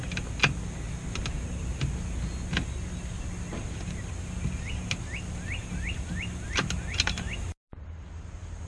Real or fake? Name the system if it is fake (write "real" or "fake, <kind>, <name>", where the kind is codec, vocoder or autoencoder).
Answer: real